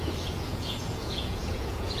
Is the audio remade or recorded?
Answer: remade